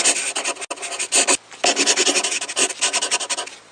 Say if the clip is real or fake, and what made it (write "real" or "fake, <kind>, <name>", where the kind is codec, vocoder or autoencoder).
real